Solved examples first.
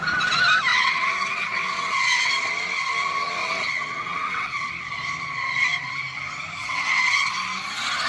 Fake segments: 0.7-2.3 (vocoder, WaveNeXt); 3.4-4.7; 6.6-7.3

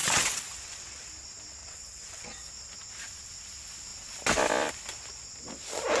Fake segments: 0.0-1.1 (vocoder, WaveNeXt); 1.6-2.5